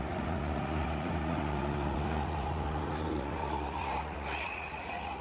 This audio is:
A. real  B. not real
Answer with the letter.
B